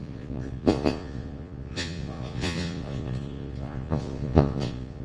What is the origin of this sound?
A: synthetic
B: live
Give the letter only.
A